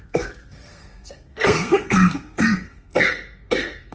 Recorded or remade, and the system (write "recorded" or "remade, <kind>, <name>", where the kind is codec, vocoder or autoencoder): remade, codec, SNAC